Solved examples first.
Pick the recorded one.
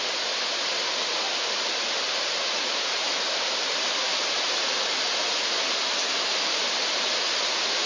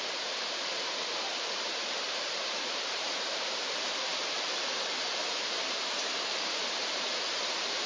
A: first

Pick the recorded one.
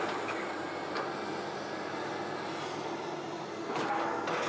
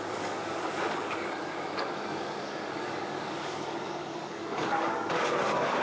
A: first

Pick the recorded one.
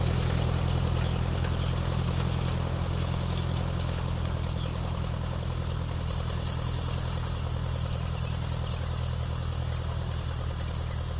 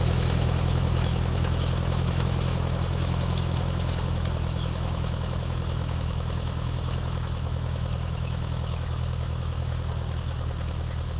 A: first